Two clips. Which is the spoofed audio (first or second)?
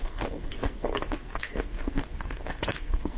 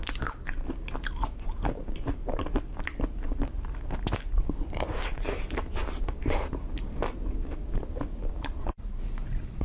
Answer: first